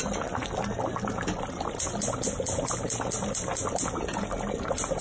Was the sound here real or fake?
real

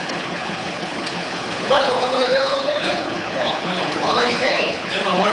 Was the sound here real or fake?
fake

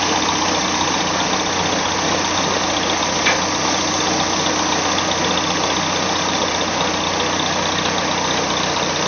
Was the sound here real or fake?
real